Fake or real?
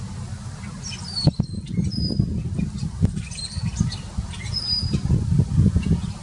real